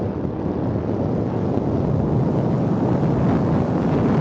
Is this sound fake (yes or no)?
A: no